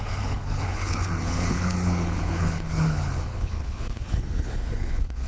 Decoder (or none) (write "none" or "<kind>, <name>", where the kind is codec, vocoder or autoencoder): codec, HILCodec